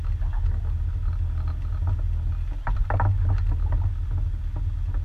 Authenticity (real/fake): real